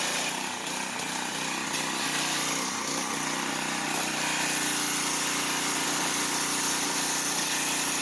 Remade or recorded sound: recorded